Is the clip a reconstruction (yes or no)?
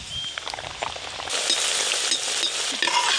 no